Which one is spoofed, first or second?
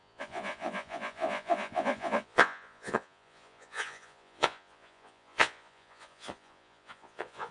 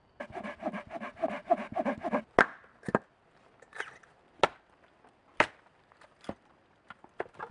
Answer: first